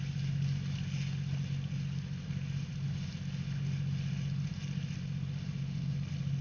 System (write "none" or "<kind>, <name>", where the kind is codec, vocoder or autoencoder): none